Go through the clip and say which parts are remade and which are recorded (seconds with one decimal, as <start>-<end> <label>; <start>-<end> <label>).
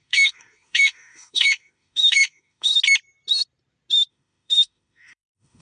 0.0-2.7 remade; 2.7-4.1 recorded; 4.1-5.6 remade